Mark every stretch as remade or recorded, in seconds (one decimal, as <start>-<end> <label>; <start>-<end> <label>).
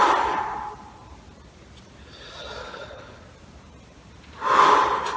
0.0-2.6 recorded; 2.6-3.2 remade; 3.2-5.2 recorded